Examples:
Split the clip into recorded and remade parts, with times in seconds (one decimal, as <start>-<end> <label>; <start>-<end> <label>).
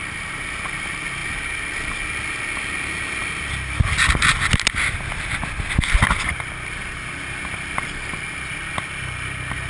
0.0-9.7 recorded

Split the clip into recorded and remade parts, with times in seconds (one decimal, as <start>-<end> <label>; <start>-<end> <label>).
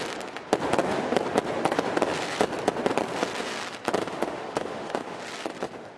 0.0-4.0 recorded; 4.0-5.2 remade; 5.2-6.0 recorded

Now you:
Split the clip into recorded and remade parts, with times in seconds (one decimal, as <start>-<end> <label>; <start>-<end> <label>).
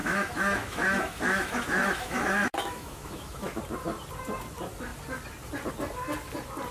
0.0-3.6 remade; 3.6-6.7 recorded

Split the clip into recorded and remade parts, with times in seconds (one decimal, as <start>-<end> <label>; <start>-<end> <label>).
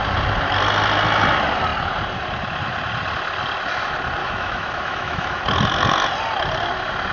0.0-4.2 recorded; 4.2-5.4 remade; 5.4-7.1 recorded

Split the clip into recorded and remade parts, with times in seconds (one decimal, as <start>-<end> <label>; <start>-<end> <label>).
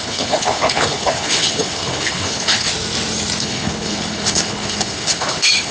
0.0-2.7 remade; 2.7-3.4 recorded; 3.4-5.7 remade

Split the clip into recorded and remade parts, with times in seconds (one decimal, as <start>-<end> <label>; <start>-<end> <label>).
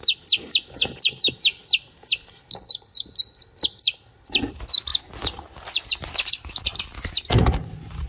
0.0-1.6 recorded; 1.6-4.3 remade; 4.3-8.1 recorded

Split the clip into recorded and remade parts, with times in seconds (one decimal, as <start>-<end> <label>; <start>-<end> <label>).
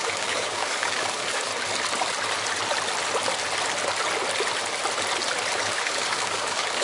0.0-1.5 remade; 1.5-5.6 recorded; 5.6-6.8 remade